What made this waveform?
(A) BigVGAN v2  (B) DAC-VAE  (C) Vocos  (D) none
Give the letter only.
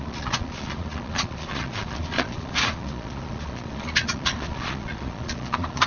C